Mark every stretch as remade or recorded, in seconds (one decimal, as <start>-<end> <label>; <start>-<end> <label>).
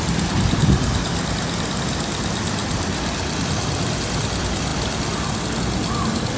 0.0-6.4 recorded